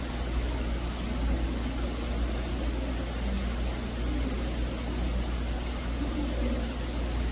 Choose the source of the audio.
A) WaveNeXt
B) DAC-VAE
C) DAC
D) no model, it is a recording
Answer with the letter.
D